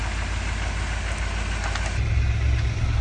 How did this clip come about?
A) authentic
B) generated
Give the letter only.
A